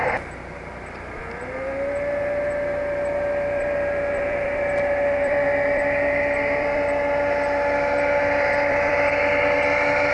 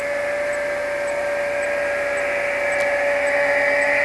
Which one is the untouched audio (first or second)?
second